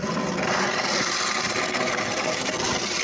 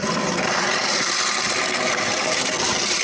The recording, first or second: first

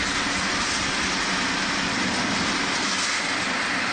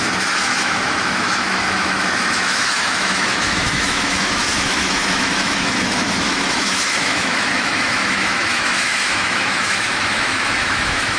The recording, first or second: first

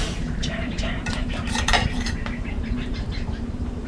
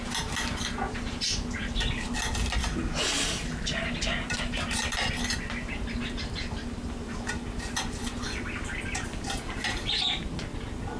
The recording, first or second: second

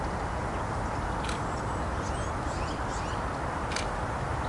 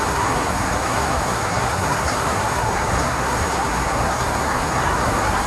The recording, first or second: first